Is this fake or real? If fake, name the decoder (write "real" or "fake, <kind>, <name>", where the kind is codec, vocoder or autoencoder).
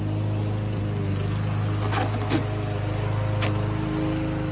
real